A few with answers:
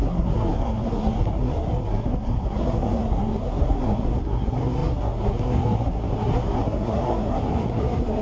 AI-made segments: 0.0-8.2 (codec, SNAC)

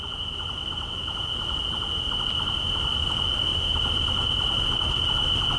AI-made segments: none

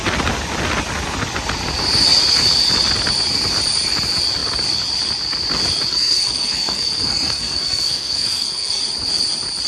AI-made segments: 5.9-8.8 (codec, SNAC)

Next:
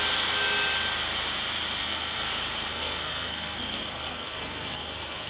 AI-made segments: 1.8-2.3 (codec, SNAC); 2.7-5.3

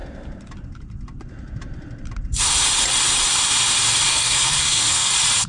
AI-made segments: 4.1-5.1 (codec, SNAC)

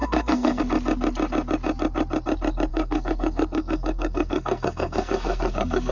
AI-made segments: 0.0-0.6 (codec, SNAC); 2.7-5.9

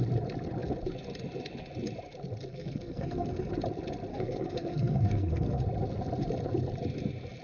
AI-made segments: 2.5-3.5 (codec, SNAC); 4.1-5.6

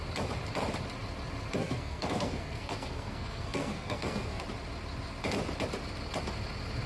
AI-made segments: 1.6-4.4 (codec, SNAC)